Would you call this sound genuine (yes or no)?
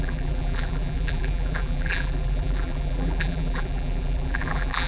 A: no